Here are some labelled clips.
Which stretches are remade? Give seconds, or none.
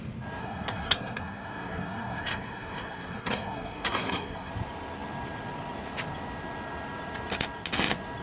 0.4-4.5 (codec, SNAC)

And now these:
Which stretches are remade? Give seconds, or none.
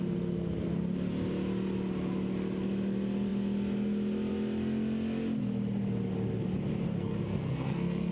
6.9-8.1 (codec, SNAC)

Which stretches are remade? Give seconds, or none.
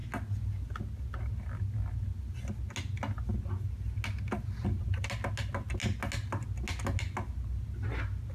none